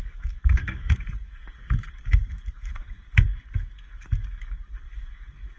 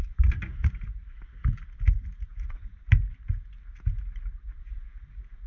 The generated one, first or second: first